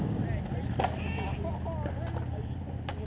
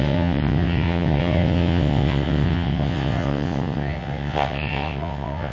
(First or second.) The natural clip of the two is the first